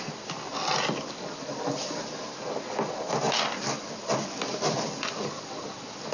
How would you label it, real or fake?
real